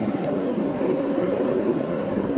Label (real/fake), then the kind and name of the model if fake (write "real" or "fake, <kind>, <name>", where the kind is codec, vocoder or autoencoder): fake, codec, SNAC